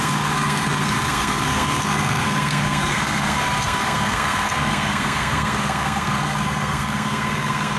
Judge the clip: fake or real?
fake